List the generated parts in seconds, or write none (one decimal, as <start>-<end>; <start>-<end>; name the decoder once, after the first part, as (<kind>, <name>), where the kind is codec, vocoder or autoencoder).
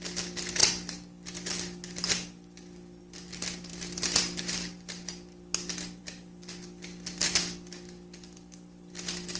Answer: none